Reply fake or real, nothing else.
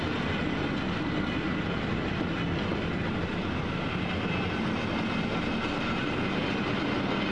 real